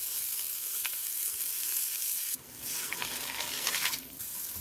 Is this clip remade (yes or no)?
yes